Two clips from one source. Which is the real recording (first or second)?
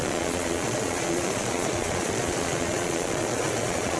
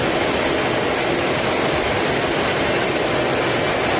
second